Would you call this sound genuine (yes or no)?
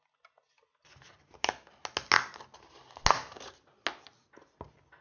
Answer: yes